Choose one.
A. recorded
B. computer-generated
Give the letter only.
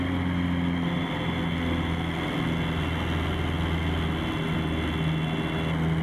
A